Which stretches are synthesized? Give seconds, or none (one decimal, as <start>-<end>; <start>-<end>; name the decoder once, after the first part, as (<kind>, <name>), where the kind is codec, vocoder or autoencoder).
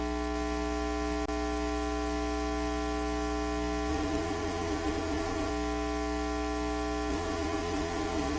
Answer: 3.9-5.5 (vocoder, Vocos); 7.1-8.4